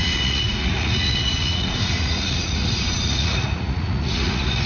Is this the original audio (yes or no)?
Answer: no